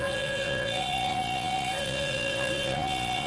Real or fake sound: fake